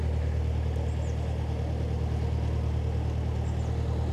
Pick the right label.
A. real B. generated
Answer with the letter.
A